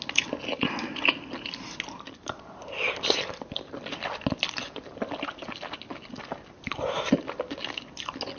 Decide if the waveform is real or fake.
real